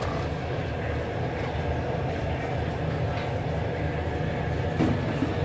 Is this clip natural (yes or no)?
yes